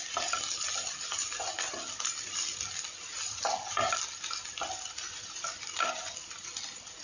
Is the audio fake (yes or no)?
no